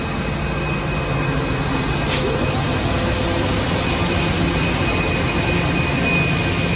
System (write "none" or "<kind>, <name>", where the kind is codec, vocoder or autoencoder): none